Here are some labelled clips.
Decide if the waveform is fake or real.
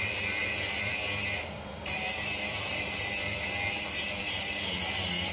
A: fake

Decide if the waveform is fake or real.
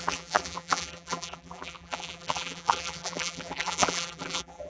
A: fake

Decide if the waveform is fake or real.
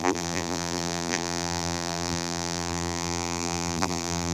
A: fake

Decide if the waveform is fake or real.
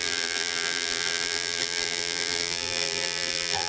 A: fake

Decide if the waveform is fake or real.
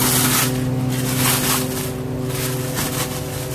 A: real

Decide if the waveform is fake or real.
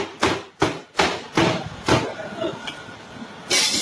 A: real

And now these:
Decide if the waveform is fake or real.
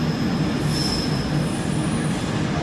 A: real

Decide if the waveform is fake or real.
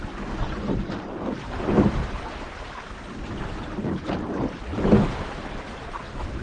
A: real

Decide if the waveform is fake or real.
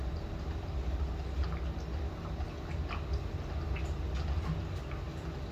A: real